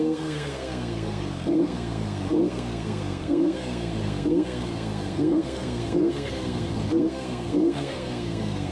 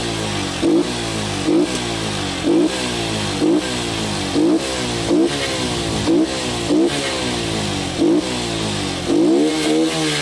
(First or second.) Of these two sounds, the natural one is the second